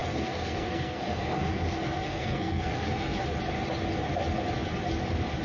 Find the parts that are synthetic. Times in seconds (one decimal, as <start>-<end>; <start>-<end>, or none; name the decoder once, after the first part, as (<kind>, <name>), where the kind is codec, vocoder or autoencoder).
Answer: 0.0-3.2 (codec, SNAC)